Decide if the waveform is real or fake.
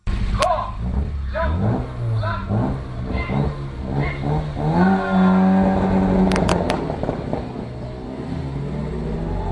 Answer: real